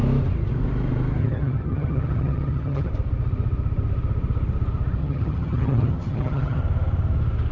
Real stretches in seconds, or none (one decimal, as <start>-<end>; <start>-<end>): 0.0-1.2; 2.9-5.0; 6.6-7.5